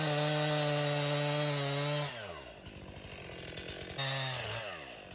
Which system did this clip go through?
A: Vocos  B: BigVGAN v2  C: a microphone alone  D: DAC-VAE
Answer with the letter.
C